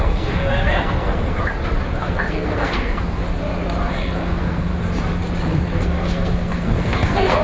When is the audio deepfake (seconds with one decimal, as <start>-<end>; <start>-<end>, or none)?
0.0-1.5; 2.0-3.2; 3.9-4.7; 5.4-7.4